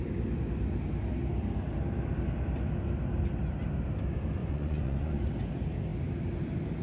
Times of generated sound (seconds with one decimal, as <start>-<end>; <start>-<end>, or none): 4.4-5.3